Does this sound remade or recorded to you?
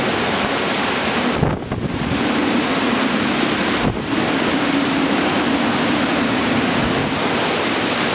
recorded